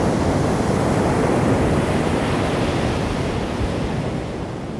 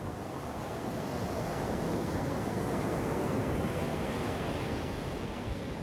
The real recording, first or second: first